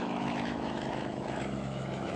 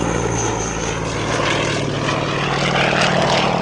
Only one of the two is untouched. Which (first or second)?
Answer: second